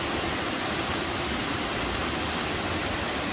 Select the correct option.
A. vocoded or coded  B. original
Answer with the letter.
B